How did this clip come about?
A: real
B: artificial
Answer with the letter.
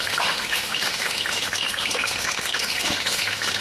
B